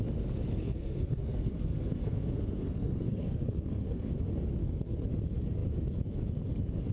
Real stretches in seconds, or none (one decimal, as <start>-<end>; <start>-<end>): 0.0-0.5; 4.1-4.6; 5.1-6.9